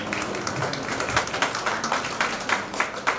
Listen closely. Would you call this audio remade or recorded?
recorded